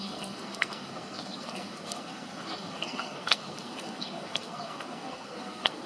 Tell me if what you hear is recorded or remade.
remade